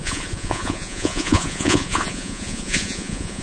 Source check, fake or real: fake